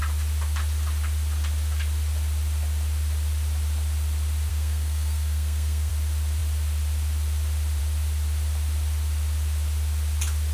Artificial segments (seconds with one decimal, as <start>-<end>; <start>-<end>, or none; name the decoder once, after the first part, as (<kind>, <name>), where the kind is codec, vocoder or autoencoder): 4.5-5.9 (codec, SNAC)